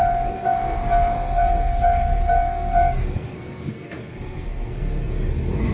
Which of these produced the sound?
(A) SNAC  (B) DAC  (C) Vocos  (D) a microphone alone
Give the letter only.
A